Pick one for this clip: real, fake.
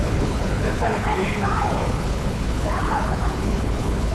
fake